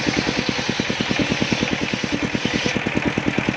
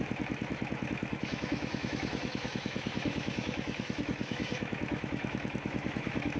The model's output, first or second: second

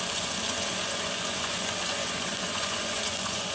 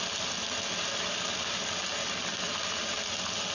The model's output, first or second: first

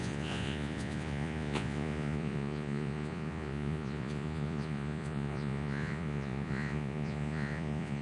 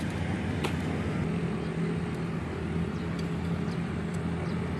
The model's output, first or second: first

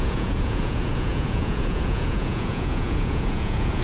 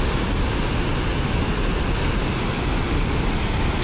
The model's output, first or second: first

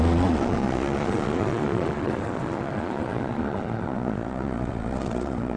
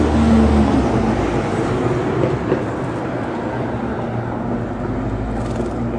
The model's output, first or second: first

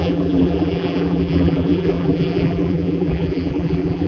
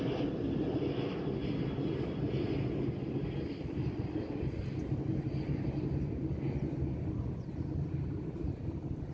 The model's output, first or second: first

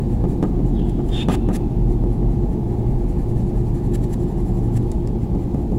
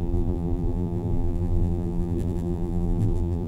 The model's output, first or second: second